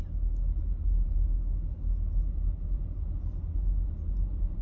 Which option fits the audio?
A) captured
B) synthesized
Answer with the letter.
A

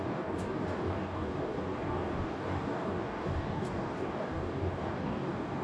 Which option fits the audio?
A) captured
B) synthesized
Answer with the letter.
B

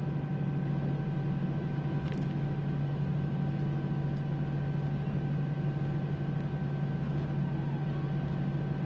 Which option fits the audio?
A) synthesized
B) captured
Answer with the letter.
B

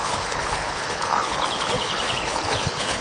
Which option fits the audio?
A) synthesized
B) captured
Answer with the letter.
A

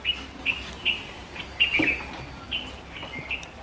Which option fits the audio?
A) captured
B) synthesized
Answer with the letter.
A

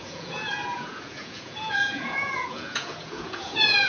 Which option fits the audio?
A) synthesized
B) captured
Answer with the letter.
A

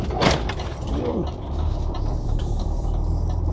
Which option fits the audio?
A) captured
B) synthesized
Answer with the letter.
B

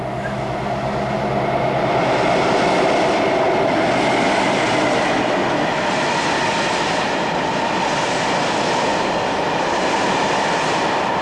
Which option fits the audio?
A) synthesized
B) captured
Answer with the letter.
B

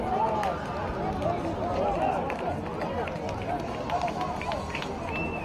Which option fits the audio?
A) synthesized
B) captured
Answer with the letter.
B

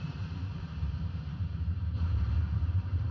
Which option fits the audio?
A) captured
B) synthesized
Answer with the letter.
B